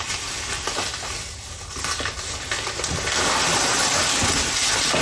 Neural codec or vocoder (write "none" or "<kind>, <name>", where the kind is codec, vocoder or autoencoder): none